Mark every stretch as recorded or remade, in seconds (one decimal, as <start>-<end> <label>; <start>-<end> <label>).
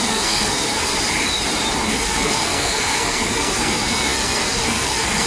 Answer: 0.0-0.9 remade; 0.9-1.9 recorded; 1.9-5.3 remade